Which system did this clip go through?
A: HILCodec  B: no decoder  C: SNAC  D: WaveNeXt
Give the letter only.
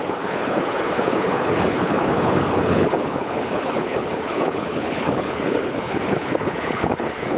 A